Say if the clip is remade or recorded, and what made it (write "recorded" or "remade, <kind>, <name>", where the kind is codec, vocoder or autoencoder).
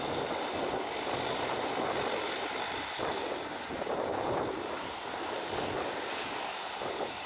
recorded